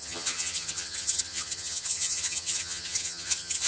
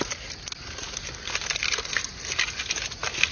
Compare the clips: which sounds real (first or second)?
second